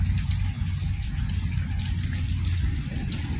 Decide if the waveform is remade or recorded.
recorded